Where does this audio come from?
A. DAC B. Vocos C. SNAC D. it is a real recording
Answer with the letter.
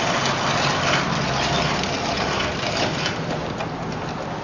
D